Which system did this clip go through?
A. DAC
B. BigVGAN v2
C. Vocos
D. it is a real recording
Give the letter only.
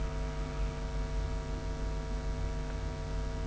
D